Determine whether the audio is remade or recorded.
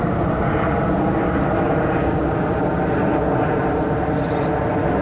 recorded